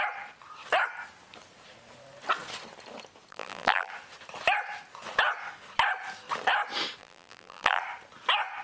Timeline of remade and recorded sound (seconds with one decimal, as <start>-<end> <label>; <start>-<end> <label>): 0.0-3.3 recorded; 3.3-3.9 remade; 3.9-7.0 recorded; 7.0-7.8 remade; 7.8-8.6 recorded